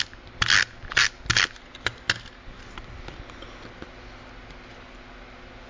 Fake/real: real